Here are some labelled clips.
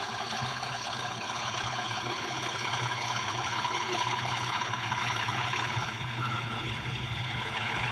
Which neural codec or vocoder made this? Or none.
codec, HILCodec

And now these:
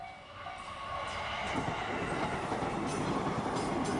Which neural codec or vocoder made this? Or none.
none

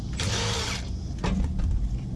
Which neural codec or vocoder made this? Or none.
none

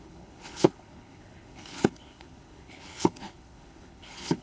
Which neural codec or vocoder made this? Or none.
codec, HILCodec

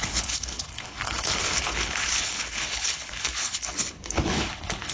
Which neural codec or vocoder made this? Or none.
codec, HILCodec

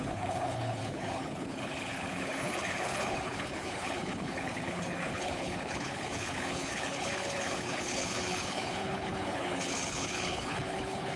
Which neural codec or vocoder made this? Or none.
codec, HILCodec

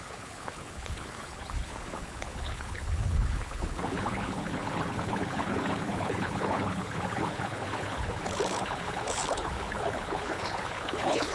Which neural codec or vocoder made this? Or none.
codec, HILCodec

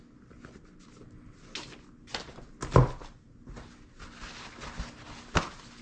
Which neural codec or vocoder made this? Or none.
none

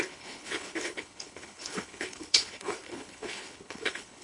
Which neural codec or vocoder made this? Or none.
codec, HILCodec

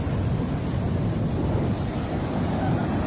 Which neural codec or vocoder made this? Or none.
none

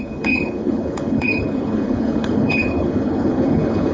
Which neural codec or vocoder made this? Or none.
codec, HILCodec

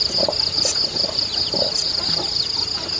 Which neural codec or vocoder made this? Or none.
none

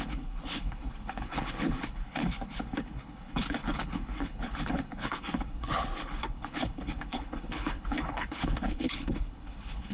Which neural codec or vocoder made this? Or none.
codec, HILCodec